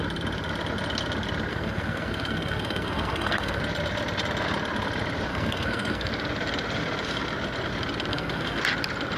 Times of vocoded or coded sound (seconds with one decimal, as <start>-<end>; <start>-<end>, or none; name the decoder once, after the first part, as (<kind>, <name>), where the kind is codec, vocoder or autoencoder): 1.5-3.6 (codec, SNAC); 5.3-6.1; 8.1-8.6